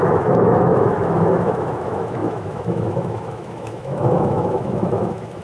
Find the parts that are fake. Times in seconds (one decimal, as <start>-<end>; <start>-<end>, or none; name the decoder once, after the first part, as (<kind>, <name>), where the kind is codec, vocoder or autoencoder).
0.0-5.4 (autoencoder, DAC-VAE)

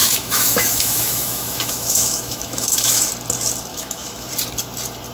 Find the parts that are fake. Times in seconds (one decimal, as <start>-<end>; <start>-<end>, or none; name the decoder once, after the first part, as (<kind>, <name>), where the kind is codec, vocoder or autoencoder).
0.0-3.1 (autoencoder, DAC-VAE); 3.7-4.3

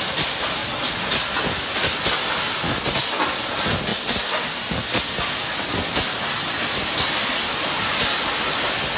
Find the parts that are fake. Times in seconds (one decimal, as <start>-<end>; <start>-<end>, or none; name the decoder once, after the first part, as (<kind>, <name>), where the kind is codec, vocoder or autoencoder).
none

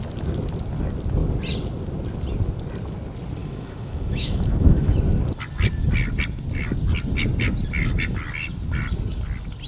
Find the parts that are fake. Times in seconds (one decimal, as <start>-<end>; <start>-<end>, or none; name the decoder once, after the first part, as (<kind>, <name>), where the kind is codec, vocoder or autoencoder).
3.4-4.9 (autoencoder, DAC-VAE)

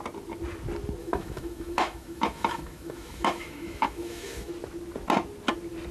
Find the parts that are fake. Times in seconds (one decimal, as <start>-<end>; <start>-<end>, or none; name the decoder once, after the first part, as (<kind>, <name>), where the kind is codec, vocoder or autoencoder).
1.0-4.5 (autoencoder, DAC-VAE)

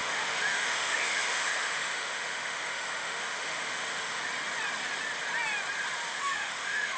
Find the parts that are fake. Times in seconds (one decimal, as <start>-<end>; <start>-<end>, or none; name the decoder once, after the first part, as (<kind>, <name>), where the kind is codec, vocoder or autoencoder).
0.0-4.2 (autoencoder, DAC-VAE); 6.1-7.0

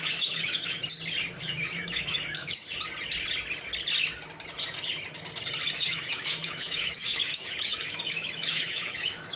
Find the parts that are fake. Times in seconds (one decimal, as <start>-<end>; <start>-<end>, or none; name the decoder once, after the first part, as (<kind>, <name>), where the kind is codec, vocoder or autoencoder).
0.0-0.8 (autoencoder, DAC-VAE); 1.3-2.6; 5.7-9.4

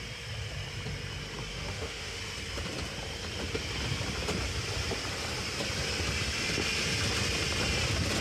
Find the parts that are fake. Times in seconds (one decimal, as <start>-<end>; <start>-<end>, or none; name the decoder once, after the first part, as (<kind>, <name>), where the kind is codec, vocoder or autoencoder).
1.5-2.2 (autoencoder, DAC-VAE)